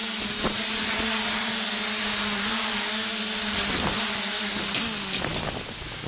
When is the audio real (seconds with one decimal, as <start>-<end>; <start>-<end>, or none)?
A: 0.0-6.1